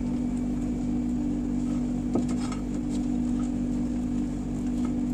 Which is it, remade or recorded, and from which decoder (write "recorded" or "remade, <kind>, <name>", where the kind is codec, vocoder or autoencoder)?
recorded